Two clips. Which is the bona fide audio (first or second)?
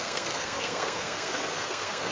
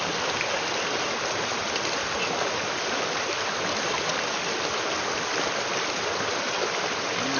second